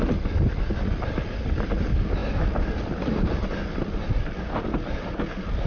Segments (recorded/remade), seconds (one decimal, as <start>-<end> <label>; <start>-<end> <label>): 0.0-5.7 recorded